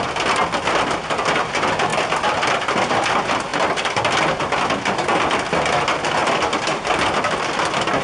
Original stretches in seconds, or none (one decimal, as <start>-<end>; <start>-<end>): 0.0-1.9; 2.9-6.2; 6.8-8.0